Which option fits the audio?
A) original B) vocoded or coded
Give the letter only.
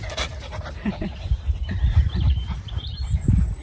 B